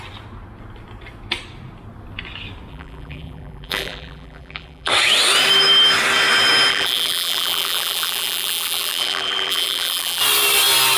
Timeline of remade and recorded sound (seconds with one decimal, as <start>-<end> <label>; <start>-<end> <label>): 0.0-2.7 recorded; 2.7-4.9 remade; 4.9-6.7 recorded; 6.7-10.2 remade; 10.2-11.0 recorded